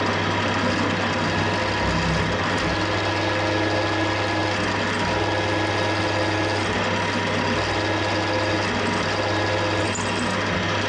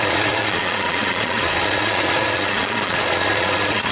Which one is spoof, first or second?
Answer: second